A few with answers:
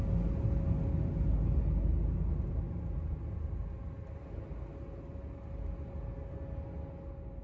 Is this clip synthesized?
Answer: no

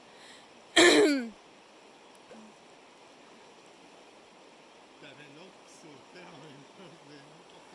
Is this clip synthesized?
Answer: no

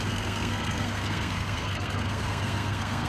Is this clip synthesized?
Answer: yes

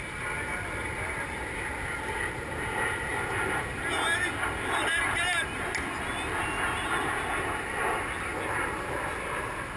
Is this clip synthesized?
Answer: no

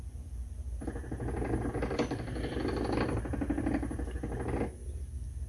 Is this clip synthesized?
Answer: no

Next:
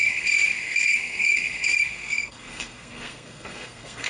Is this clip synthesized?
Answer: yes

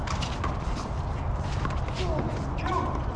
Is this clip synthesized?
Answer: no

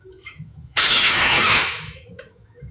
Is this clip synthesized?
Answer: yes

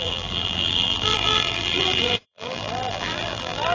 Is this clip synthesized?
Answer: yes